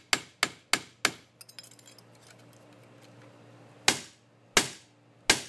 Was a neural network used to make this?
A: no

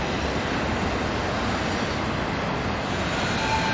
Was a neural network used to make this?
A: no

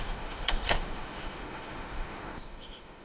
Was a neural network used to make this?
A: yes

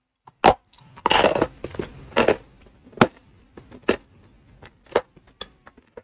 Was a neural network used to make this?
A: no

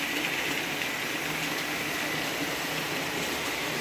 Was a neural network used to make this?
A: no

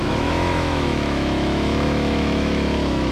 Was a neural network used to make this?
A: yes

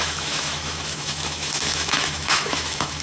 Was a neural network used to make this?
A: yes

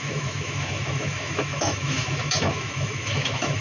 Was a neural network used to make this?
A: yes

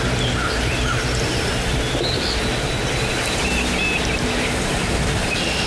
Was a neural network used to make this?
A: no